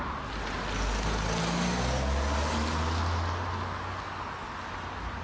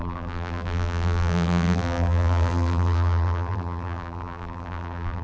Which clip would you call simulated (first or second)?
second